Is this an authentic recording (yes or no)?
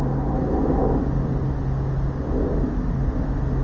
yes